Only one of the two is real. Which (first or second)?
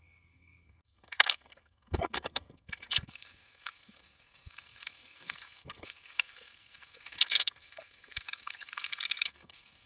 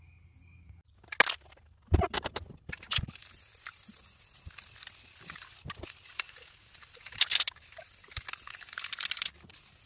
second